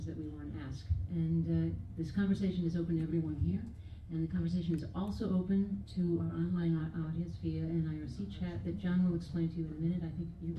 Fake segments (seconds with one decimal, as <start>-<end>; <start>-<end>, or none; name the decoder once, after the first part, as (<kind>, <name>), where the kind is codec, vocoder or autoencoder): 3.1-4.7 (codec, SNAC); 5.8-6.8